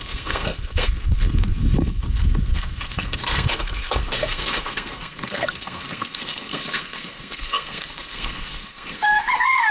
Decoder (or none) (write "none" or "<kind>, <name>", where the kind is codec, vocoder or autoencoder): codec, SNAC